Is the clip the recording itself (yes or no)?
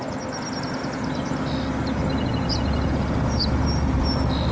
yes